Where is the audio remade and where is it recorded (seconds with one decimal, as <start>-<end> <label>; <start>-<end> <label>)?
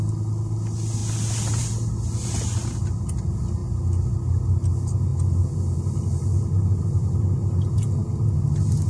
0.0-8.9 recorded